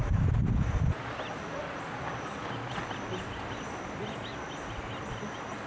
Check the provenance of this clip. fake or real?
real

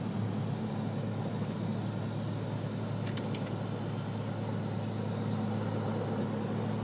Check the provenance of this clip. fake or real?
real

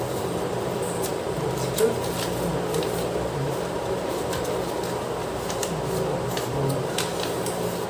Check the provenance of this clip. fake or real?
real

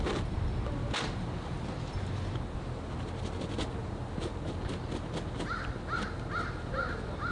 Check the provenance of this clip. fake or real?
real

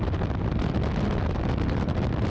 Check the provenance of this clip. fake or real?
real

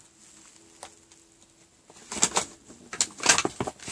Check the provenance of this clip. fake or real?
real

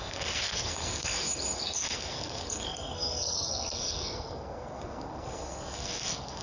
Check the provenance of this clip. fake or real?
fake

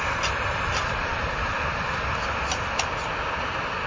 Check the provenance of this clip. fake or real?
real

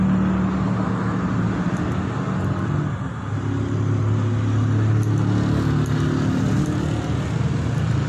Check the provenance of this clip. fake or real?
real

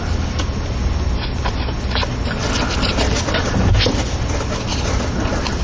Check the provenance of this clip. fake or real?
real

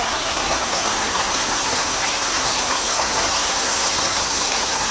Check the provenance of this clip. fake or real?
fake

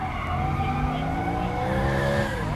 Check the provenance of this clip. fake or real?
real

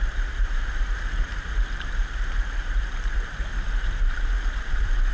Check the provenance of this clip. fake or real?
fake